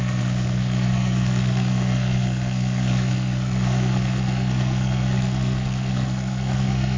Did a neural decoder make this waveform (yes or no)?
yes